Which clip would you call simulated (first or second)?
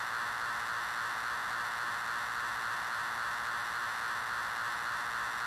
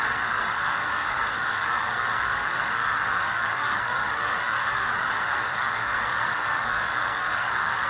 second